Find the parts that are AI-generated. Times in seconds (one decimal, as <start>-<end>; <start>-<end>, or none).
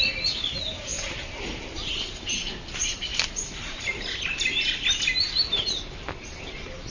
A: 3.1-4.2